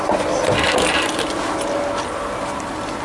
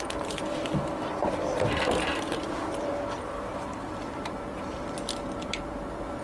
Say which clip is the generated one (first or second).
second